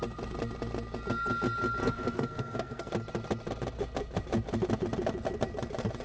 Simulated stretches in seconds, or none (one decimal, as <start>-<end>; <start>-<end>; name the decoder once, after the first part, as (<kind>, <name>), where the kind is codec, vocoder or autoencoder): 1.8-2.9 (codec, SNAC)